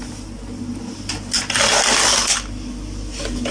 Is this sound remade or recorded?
recorded